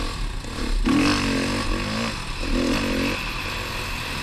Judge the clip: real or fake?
real